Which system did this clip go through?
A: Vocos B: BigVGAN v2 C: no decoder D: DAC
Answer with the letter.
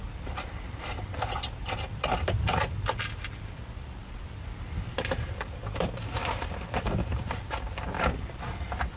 B